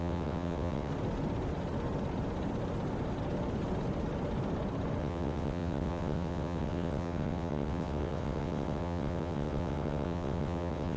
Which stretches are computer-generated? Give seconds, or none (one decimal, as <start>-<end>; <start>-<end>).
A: 0.0-0.9; 5.0-11.0